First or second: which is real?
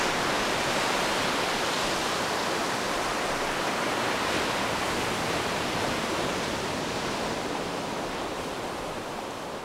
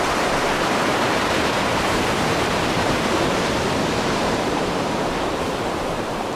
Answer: first